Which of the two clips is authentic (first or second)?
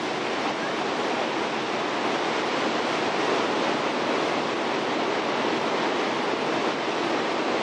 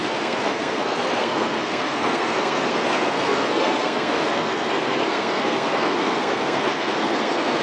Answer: first